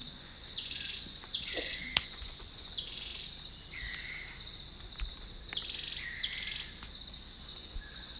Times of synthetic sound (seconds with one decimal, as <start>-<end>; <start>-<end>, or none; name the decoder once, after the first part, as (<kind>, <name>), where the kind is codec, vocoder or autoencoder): 0.0-3.1 (vocoder, Vocos); 7.5-8.2